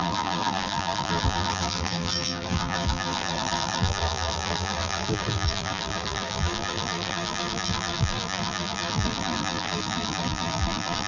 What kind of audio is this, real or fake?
fake